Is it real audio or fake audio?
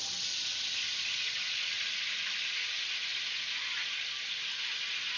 real